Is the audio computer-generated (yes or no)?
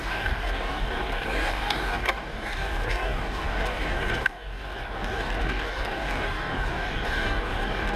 yes